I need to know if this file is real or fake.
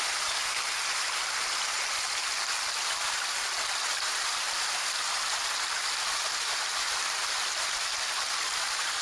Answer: real